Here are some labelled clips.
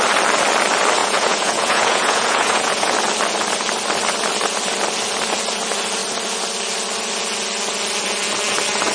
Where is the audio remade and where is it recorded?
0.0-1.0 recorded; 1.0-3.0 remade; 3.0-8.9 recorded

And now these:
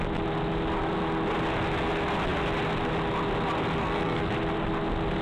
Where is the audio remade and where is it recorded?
0.0-3.8 recorded; 3.8-4.3 remade; 4.3-5.2 recorded